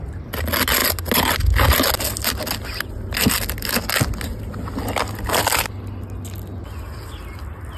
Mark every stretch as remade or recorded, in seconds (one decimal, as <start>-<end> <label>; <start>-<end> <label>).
0.0-7.8 recorded